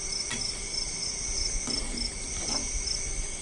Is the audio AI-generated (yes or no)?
no